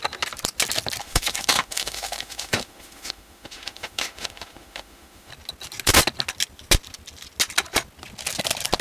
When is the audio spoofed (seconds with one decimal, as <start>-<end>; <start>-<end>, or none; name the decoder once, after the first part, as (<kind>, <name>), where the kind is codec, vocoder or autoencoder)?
1.0-5.3 (autoencoder, DAC-VAE)